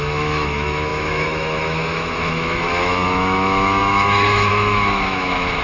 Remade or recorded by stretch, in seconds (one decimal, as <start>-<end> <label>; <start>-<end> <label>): 0.0-5.6 remade